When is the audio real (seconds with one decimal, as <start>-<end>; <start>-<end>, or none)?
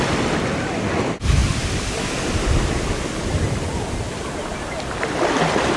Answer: 0.0-5.8